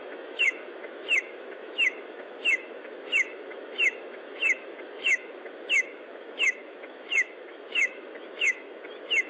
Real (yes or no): no